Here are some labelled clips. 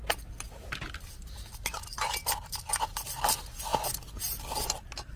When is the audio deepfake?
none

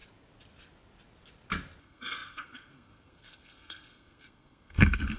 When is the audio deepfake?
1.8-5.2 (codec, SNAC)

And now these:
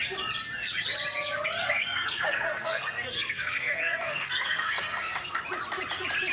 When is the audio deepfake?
1.6-5.4 (codec, SNAC)

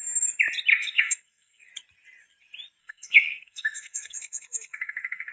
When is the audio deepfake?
0.7-1.7 (codec, SNAC); 2.8-5.3

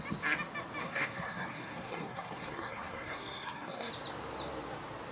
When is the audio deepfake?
0.8-3.9 (codec, SNAC)

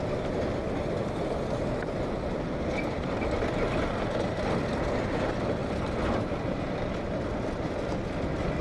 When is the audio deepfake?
none

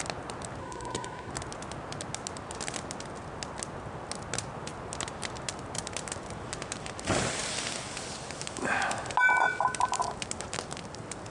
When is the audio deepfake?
0.6-1.3 (codec, SNAC)

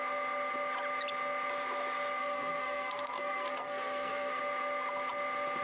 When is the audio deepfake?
2.2-4.4 (codec, SNAC)